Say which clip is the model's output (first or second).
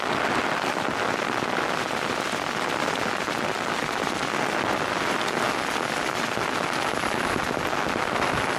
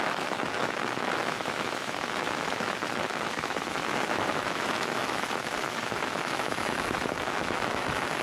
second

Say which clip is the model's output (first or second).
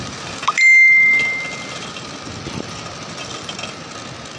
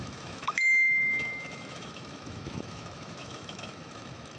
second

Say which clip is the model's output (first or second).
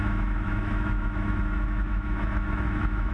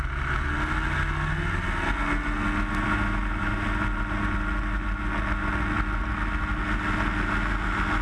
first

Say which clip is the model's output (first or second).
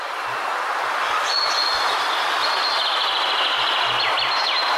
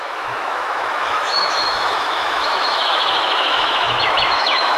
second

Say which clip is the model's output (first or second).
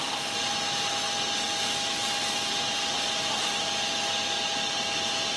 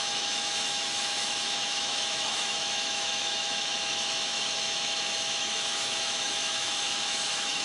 second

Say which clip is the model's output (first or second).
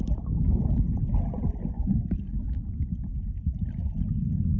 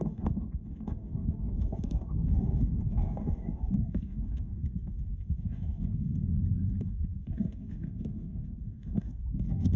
second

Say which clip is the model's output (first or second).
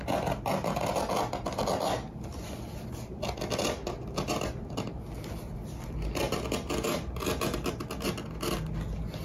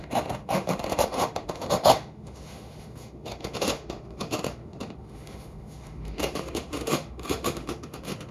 second